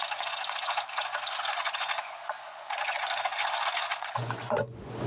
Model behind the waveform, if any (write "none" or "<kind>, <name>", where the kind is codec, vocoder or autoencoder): vocoder, Vocos